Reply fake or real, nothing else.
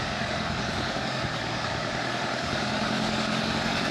fake